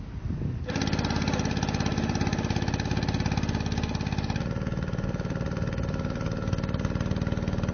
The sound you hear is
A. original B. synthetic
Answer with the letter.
A